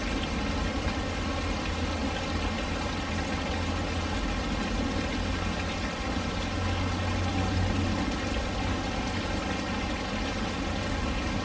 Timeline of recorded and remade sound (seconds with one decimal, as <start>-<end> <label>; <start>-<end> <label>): 0.0-11.4 recorded